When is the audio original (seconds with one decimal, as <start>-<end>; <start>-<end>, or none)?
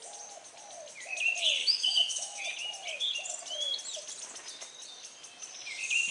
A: 0.0-1.6; 2.4-6.1